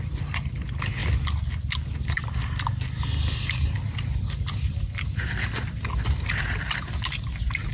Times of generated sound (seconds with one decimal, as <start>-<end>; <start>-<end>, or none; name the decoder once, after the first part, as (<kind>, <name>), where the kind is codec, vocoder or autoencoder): none